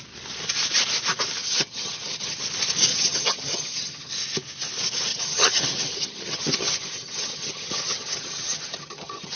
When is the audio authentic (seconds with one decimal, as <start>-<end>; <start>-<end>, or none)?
0.0-1.4; 2.4-2.9; 4.1-5.1

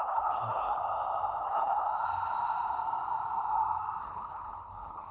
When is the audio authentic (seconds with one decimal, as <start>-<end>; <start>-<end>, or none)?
0.8-1.4; 1.9-4.0

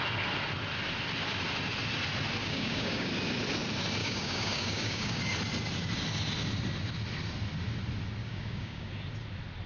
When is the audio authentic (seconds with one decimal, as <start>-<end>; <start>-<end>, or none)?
0.0-2.4; 3.1-4.0; 5.2-8.2; 8.9-9.7

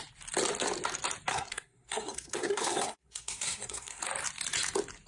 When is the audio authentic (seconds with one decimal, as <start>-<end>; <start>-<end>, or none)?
0.0-1.3; 4.0-5.1

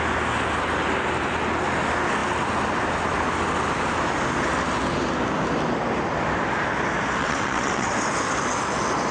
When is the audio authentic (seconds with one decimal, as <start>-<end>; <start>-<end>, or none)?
0.0-7.2; 7.9-9.1

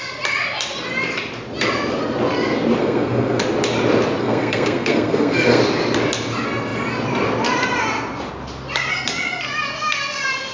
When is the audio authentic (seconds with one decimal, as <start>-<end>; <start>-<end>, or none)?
0.0-2.8; 3.4-4.2; 5.6-10.5

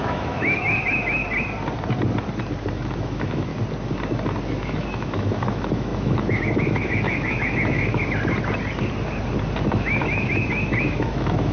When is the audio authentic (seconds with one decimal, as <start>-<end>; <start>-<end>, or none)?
1.2-2.7; 3.5-4.5; 8.0-9.7